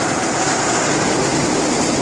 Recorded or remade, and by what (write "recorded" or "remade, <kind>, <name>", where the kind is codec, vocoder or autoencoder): recorded